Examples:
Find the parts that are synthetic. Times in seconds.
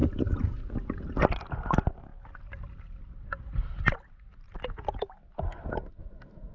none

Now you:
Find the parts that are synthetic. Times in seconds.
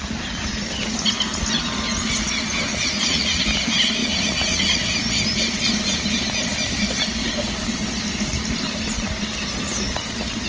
2.7-3.4 (vocoder, Vocos); 4.0-4.8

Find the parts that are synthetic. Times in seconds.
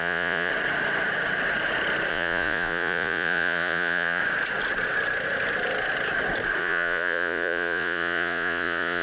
0.0-0.5 (vocoder, Vocos); 2.1-4.2; 6.6-9.0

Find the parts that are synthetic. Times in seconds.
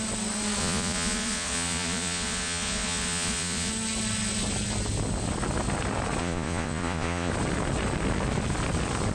0.6-3.7 (vocoder, Vocos); 6.2-7.3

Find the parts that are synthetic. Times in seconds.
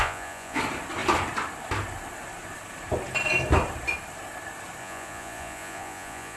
0.0-0.6 (vocoder, Vocos); 4.8-6.4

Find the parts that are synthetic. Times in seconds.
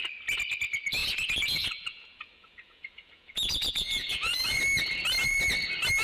1.0-4.6 (vocoder, Vocos)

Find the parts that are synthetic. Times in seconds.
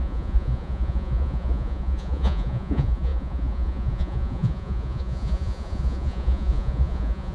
0.0-7.3 (vocoder, Vocos)